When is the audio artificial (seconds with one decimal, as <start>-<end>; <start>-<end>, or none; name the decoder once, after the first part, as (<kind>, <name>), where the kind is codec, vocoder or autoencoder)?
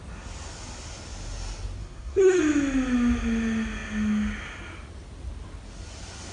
1.8-2.4 (codec, SNAC)